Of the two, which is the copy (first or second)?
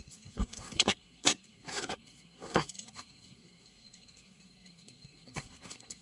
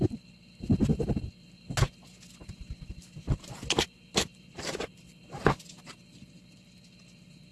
first